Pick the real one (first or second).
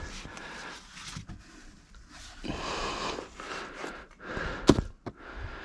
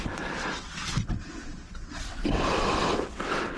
first